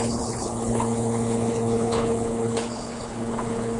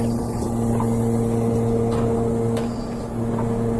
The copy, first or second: first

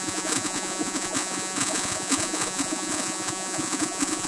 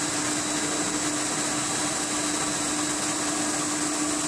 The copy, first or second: first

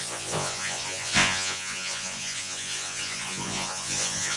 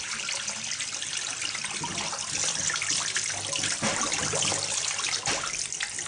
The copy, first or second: first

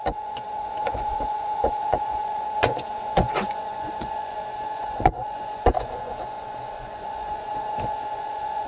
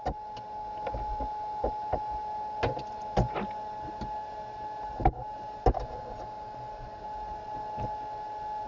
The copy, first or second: first